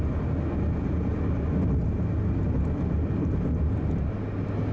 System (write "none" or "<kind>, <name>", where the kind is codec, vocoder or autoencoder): none